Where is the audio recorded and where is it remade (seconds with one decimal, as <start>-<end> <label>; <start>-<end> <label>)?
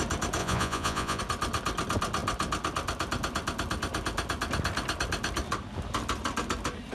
0.0-0.4 recorded; 0.4-1.2 remade; 1.2-6.9 recorded